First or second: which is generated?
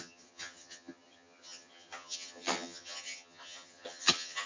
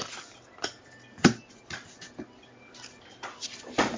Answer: first